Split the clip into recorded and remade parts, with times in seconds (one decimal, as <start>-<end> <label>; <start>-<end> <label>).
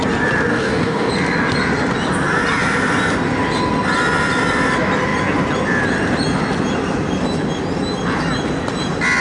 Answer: 0.0-0.5 recorded; 0.5-1.1 remade; 1.1-9.2 recorded